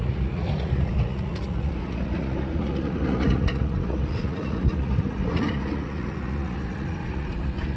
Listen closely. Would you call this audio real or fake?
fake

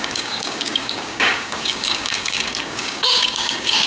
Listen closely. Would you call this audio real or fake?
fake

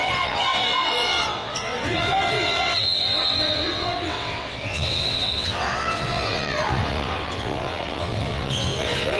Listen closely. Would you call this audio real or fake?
fake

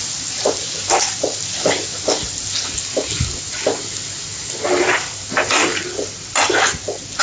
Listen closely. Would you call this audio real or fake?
real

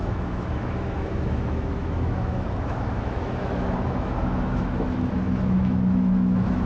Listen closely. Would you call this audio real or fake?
fake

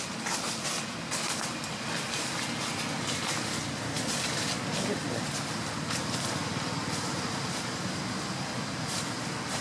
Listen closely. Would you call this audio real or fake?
real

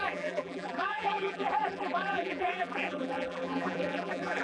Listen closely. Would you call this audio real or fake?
fake